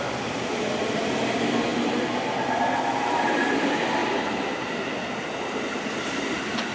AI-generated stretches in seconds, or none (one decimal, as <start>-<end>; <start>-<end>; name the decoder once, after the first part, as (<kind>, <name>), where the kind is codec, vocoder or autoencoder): none